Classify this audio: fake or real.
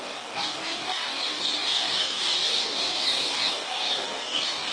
fake